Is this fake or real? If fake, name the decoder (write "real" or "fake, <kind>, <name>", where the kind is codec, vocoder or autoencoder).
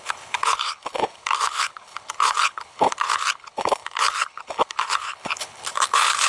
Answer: fake, codec, HILCodec